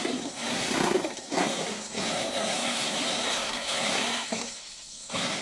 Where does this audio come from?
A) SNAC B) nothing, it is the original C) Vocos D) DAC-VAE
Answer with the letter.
A